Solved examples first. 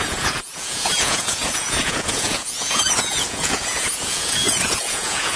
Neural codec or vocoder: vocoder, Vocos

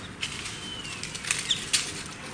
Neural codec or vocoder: none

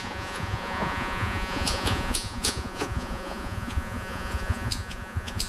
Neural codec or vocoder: vocoder, Vocos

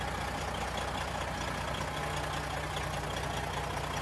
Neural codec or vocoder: none